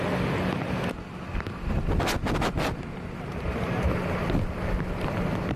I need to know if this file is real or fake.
real